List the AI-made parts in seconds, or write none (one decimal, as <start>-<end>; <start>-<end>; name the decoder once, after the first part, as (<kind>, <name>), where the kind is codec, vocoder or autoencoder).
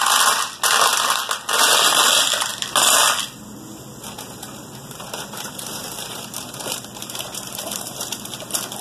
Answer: 4.8-8.4 (vocoder, BigVGAN v2)